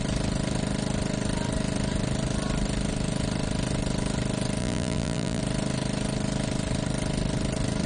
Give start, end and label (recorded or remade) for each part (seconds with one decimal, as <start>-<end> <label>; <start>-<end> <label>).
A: 0.0-4.6 recorded; 4.6-5.4 remade; 5.4-7.9 recorded